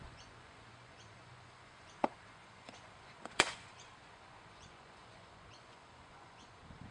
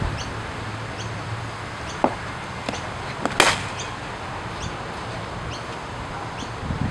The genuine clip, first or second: second